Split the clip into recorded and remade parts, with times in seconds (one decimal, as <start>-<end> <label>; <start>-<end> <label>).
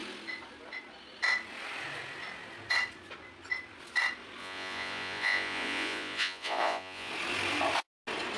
0.0-4.4 recorded; 4.4-7.1 remade; 7.1-8.4 recorded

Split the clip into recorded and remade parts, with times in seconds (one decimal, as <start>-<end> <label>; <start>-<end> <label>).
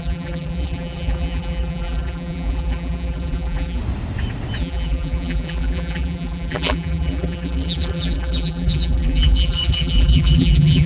0.0-3.8 remade; 3.8-4.6 recorded; 4.6-10.9 remade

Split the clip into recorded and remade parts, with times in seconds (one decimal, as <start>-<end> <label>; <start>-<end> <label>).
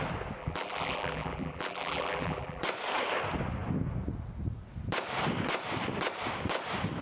0.0-0.4 recorded; 0.4-2.6 remade; 2.6-7.0 recorded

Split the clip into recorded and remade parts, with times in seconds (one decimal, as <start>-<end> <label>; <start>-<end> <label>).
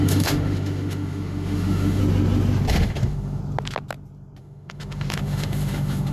0.0-2.0 remade; 2.0-2.7 recorded; 2.7-3.4 remade; 3.4-4.4 recorded; 4.4-6.1 remade